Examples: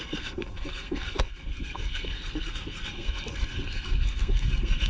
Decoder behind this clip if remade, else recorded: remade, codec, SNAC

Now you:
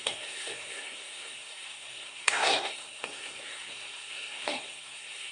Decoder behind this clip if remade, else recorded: remade, codec, SNAC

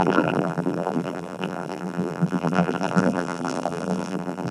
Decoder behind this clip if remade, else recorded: remade, vocoder, BigVGAN v2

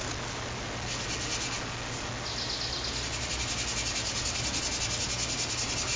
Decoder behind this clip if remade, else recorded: recorded